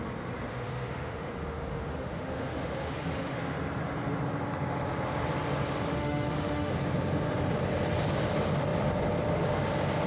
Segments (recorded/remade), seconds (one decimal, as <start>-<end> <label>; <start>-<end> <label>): 0.0-0.5 recorded; 0.5-3.4 remade; 3.4-5.9 recorded; 5.9-6.7 remade; 6.7-10.1 recorded